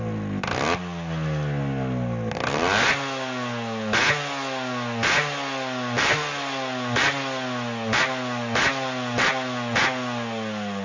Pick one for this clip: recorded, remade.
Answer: recorded